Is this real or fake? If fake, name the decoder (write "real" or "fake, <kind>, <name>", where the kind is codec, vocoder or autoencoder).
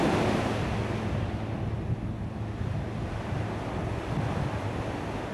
real